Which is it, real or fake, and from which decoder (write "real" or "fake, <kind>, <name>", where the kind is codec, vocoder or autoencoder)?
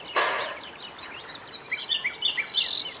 real